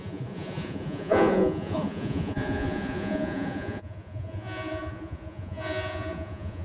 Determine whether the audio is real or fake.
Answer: fake